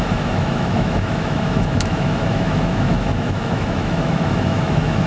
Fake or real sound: fake